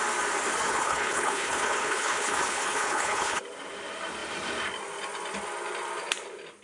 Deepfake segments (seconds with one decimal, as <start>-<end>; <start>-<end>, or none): 0.7-3.4